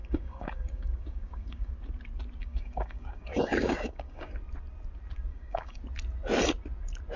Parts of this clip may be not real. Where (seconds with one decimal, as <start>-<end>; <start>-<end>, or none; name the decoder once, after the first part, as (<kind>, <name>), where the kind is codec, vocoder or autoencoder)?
0.0-1.7 (codec, DAC); 2.4-4.3; 5.3-5.8

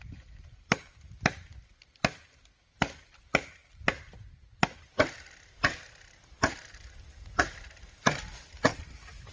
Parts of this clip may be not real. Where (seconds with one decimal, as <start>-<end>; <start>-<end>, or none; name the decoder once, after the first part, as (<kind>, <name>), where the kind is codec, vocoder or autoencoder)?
none

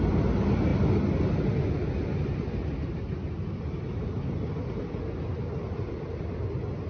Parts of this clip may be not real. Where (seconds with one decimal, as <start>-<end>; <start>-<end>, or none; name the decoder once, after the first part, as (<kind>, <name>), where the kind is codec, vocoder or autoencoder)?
none

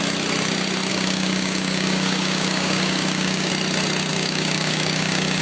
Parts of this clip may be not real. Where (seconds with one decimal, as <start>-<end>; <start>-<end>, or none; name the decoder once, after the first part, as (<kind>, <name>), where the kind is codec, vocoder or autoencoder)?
0.9-3.5 (codec, DAC); 4.1-5.4

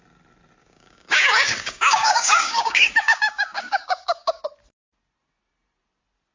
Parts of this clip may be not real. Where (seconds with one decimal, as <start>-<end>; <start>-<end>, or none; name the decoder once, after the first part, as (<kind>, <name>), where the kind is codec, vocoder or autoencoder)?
0.6-4.4 (codec, DAC)

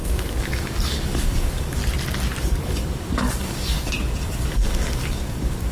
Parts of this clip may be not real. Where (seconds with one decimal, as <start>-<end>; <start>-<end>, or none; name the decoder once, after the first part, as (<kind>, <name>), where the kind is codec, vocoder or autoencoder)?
0.0-1.8 (codec, DAC); 2.4-5.7

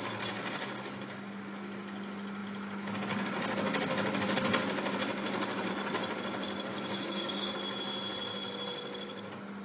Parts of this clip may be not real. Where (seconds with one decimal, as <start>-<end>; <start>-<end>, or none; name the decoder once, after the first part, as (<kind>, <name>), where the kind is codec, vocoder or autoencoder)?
6.7-7.5 (codec, DAC)